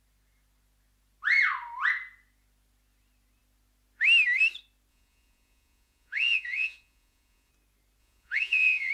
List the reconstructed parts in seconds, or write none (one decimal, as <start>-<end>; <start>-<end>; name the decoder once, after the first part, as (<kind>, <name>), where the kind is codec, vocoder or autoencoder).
4.9-7.5 (vocoder, Vocos); 8.0-8.9